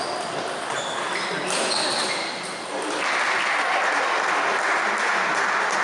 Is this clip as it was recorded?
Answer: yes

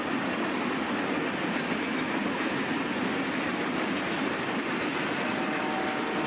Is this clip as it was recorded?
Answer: yes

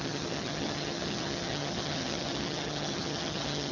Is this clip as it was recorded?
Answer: no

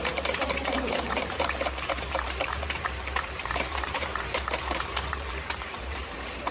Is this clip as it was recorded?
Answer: no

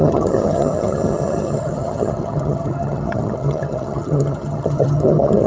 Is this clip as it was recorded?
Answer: no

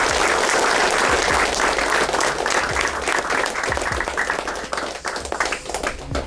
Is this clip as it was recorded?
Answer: yes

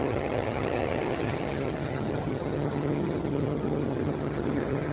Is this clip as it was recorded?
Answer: no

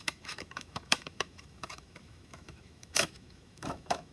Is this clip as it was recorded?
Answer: no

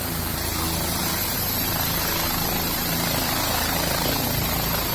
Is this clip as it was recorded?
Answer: no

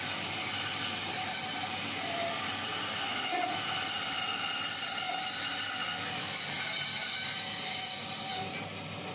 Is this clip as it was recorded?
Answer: yes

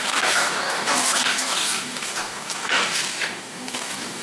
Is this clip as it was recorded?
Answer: no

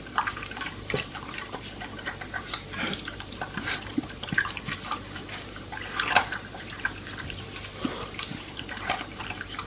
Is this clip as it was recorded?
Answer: no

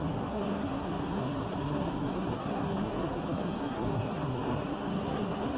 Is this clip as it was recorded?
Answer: no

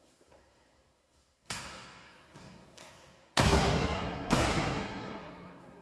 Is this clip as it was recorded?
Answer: no